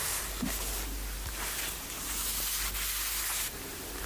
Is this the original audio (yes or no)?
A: yes